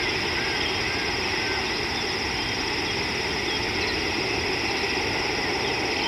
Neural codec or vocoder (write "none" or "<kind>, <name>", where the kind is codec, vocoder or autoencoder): none